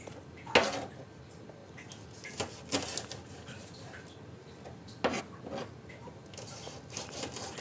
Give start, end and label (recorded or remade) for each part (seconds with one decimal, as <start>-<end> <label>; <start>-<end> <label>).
0.0-7.6 recorded